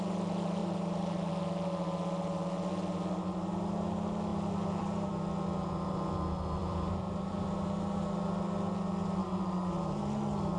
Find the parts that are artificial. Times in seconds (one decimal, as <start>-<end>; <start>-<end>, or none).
0.6-1.3; 4.3-5.1; 6.6-8.0; 9.2-10.0